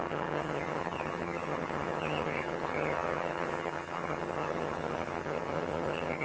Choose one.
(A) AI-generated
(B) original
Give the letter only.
A